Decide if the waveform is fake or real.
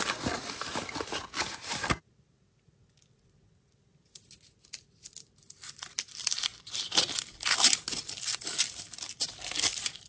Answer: real